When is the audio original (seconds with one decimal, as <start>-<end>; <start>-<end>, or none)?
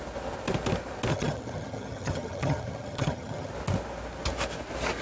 0.0-1.1; 3.5-5.0